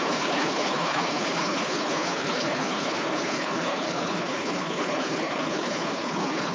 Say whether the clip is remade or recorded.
remade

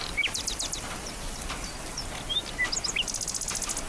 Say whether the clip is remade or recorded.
recorded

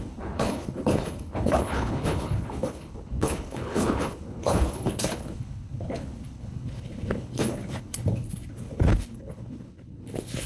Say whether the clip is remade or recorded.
remade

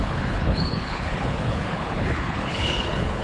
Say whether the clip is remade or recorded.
remade